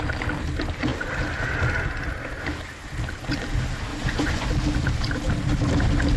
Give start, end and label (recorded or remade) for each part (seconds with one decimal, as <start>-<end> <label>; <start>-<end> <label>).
0.0-3.9 recorded; 3.9-4.5 remade; 4.5-6.2 recorded